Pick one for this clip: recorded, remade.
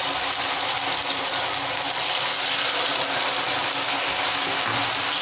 recorded